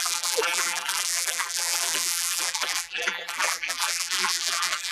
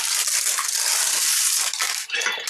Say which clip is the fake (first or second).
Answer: first